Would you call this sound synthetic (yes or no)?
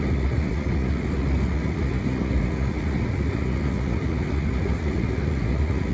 yes